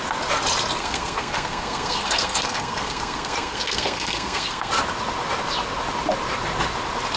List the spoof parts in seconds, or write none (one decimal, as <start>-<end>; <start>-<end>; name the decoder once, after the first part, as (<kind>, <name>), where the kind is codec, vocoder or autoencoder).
0.8-4.7 (codec, SNAC)